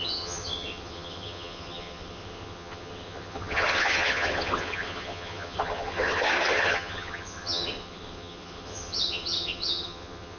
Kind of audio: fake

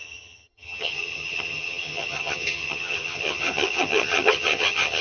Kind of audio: fake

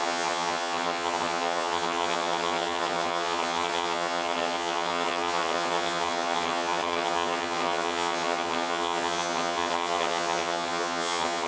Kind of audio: fake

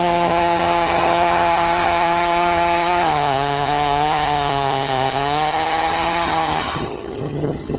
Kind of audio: fake